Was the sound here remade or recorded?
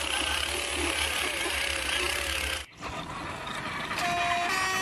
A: recorded